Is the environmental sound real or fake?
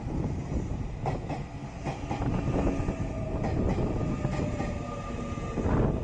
real